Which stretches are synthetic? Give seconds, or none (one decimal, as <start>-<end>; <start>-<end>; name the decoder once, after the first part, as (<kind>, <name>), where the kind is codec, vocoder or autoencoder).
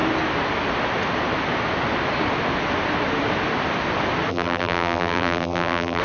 4.3-6.0 (vocoder, BigVGAN v2)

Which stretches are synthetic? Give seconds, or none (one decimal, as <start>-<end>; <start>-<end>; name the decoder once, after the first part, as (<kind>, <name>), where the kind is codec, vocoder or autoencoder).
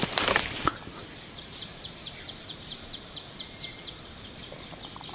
0.0-5.1 (vocoder, BigVGAN v2)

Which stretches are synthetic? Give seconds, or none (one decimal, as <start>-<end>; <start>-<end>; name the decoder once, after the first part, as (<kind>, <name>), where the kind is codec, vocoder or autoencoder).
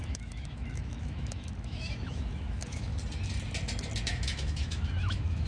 0.0-2.9 (autoencoder, DAC-VAE); 4.0-5.5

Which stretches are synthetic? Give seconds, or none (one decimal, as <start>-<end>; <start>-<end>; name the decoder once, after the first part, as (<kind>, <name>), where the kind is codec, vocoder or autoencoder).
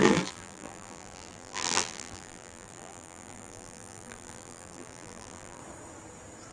0.0-5.6 (vocoder, BigVGAN v2)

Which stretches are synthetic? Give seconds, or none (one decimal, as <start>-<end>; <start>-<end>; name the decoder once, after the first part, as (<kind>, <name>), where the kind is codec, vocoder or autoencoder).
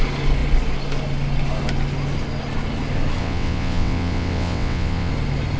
3.2-5.1 (vocoder, WaveNeXt)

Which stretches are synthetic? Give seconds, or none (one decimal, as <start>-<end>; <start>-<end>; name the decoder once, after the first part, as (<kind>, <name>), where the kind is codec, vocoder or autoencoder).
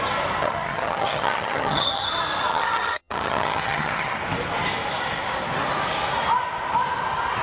0.4-2.1 (vocoder, HiFi-GAN); 2.5-4.2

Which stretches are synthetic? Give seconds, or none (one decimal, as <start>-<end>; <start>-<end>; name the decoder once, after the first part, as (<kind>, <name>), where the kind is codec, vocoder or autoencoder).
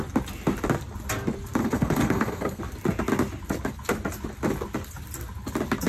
1.6-2.6 (codec, SNAC)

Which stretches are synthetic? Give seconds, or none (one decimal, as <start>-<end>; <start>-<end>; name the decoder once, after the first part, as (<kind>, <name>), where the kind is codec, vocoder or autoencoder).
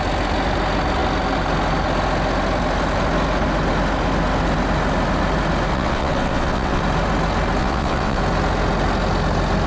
5.7-6.8 (vocoder, WaveNeXt); 7.6-8.2